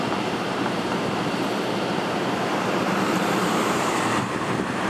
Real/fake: fake